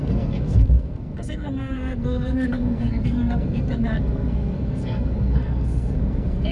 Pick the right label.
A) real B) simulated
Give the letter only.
B